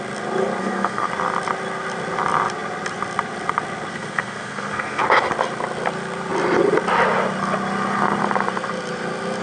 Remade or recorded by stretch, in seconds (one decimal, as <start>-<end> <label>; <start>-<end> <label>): 0.0-0.6 recorded; 0.6-1.1 remade; 1.1-3.9 recorded; 3.9-5.0 remade; 5.0-9.4 recorded